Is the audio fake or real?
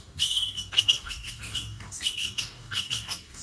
fake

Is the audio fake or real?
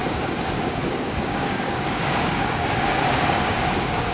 fake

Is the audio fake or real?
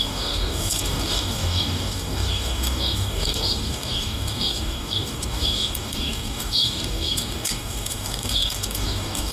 fake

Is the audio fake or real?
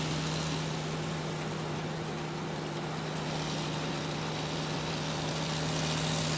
real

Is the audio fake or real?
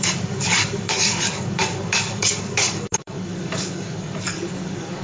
fake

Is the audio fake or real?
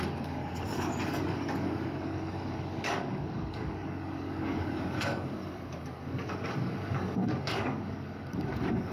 fake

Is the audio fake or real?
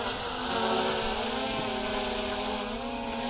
real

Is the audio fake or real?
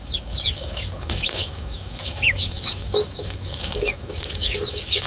fake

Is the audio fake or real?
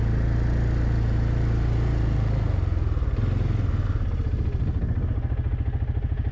real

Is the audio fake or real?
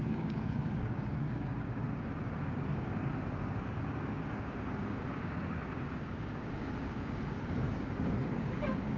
fake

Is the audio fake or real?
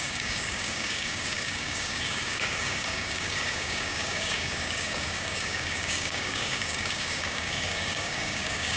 fake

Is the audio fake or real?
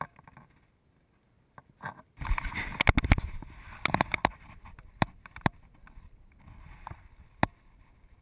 real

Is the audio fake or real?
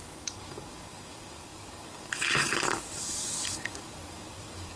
fake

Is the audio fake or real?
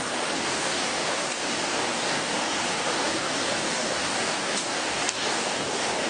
fake